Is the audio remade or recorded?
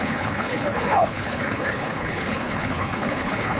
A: remade